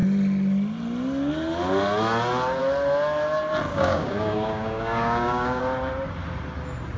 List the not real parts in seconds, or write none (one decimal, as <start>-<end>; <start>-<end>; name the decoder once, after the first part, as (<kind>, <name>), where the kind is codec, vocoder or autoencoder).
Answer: 3.7-5.6 (codec, DAC)